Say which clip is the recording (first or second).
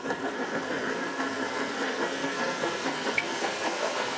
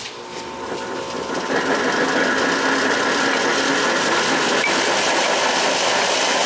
second